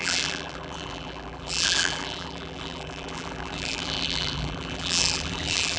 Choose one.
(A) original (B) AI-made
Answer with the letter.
B